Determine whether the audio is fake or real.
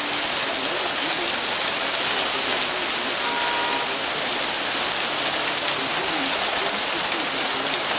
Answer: real